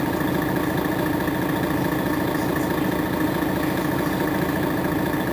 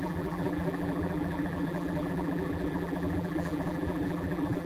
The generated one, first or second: second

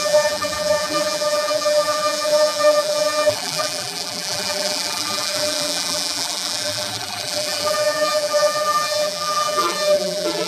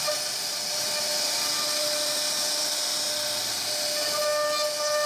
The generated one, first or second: first